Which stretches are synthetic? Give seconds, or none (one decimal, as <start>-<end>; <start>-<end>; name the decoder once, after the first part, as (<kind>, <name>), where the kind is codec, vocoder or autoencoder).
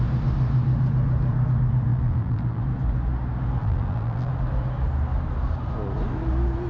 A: 1.9-2.6 (vocoder, BigVGAN v2); 3.6-4.3